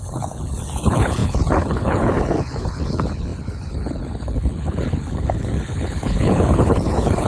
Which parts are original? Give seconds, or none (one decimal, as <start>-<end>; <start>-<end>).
none

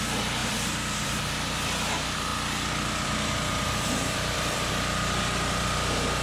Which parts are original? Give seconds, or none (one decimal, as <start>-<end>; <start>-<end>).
0.0-0.4; 1.2-2.3; 4.7-6.2

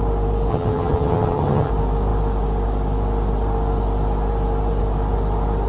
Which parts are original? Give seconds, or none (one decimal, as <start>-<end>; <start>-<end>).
0.0-0.5; 1.7-5.7

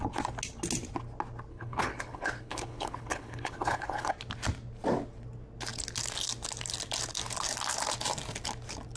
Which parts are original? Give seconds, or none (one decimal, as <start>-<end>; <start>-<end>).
0.0-1.5; 4.1-9.0

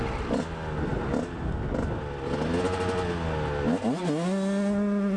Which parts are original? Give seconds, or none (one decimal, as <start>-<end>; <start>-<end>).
0.0-5.2

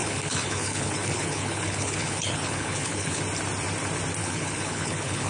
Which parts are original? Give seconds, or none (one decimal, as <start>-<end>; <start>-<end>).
3.2-4.2